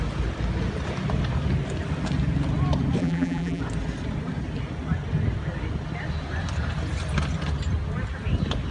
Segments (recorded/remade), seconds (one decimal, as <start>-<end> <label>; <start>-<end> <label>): 0.0-3.0 recorded; 3.0-3.6 remade; 3.6-8.7 recorded